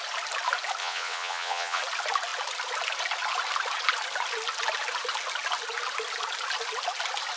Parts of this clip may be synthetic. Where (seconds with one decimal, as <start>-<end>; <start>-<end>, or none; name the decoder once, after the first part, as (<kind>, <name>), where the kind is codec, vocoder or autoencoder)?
0.8-1.8 (vocoder, WaveNeXt)